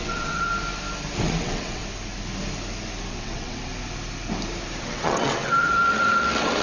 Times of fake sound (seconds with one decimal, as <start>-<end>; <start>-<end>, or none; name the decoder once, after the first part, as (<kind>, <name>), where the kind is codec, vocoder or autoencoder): 0.0-0.5 (vocoder, WaveNeXt); 1.2-1.8; 3.1-3.7; 4.8-6.6